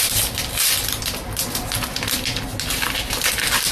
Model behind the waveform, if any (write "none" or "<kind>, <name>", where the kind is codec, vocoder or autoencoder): none